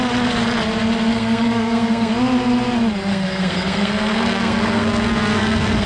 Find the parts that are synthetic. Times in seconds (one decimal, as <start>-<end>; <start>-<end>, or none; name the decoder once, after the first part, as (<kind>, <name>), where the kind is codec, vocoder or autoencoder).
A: 1.1-2.1 (codec, SNAC); 3.1-5.9